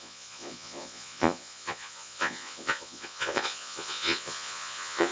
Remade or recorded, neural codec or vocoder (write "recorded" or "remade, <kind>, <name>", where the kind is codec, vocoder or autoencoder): remade, vocoder, Vocos